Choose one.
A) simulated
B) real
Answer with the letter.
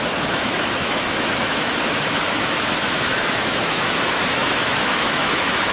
A